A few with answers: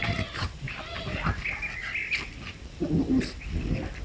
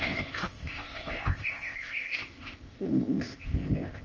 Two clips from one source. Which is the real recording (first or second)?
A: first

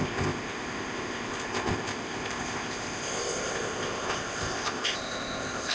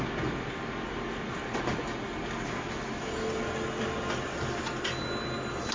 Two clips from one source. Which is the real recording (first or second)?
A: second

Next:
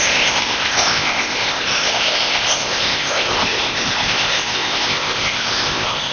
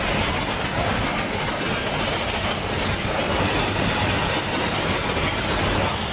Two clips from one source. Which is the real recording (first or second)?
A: second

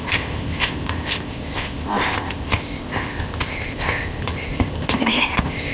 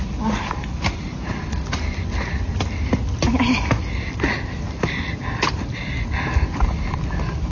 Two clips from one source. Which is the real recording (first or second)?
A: second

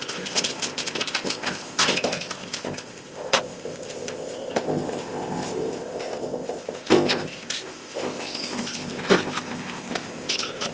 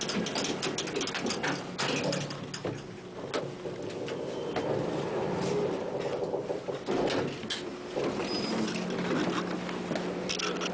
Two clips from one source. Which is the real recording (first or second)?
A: second